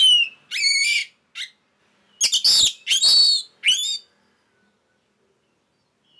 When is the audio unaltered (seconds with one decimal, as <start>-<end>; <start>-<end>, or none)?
0.0-6.2

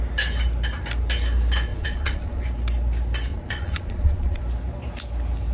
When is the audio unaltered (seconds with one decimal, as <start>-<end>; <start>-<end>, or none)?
0.0-1.7; 2.4-3.3; 4.4-5.5